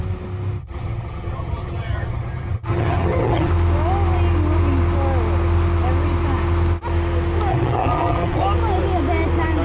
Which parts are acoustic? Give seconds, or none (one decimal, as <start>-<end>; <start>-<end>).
0.0-0.6; 3.5-7.5; 8.4-9.6

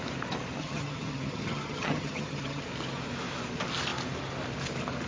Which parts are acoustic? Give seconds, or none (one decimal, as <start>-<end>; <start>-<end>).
0.0-0.6; 2.6-5.1

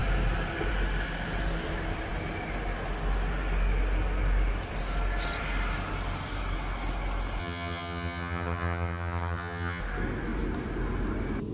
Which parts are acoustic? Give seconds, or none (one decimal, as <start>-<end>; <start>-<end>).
0.0-7.4; 9.8-11.5

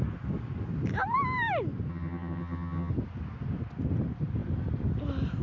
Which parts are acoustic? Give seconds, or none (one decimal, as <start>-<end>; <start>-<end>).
0.0-1.9; 2.9-5.4

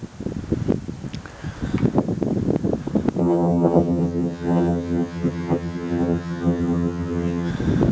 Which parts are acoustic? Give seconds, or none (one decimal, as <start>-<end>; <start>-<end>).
0.0-3.2; 7.5-7.9

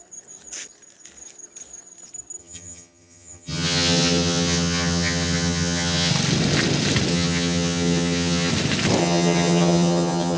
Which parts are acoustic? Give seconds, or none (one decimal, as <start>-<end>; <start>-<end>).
0.0-2.4; 6.1-7.1; 8.5-9.0

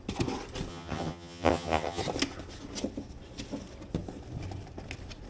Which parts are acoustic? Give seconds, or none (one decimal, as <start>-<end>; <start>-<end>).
0.0-0.7; 2.0-5.3

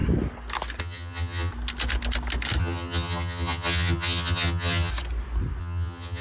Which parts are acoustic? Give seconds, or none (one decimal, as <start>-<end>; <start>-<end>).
0.0-0.8; 1.5-2.6; 4.9-5.6